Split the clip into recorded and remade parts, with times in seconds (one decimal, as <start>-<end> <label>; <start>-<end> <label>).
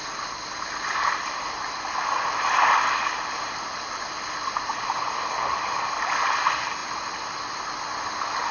0.0-8.5 recorded